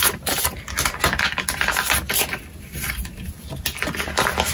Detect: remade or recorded recorded